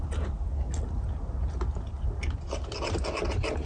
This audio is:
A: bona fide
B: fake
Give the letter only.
A